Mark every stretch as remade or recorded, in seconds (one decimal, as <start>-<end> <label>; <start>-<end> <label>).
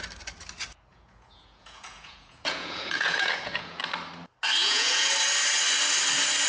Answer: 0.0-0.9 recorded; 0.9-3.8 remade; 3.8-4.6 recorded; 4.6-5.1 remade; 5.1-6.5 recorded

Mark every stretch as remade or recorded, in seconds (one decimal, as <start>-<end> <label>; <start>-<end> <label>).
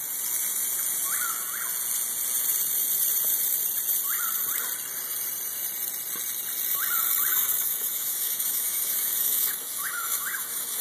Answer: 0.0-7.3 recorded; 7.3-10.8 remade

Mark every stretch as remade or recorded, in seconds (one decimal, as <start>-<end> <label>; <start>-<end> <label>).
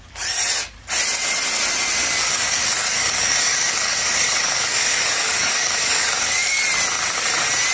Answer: 0.0-2.0 recorded; 2.0-6.6 remade; 6.6-7.7 recorded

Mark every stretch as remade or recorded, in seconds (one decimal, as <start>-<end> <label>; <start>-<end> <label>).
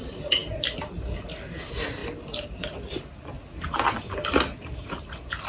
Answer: 0.0-5.5 recorded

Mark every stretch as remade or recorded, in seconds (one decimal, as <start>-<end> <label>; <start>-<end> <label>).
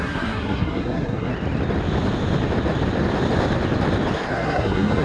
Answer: 0.0-1.3 remade; 1.3-4.3 recorded; 4.3-5.0 remade